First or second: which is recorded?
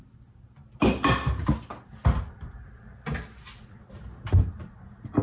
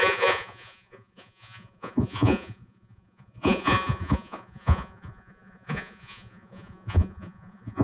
first